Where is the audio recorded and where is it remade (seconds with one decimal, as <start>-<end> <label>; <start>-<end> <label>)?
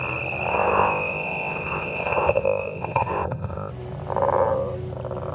0.0-0.5 recorded; 0.5-3.7 remade; 3.7-5.3 recorded